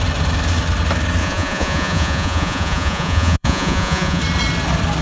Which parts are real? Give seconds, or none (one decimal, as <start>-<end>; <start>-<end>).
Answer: 0.0-1.2; 4.2-5.0